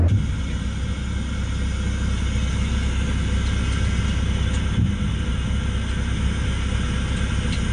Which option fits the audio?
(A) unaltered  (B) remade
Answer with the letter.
A